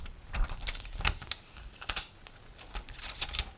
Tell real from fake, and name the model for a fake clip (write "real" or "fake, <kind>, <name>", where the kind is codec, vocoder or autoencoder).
real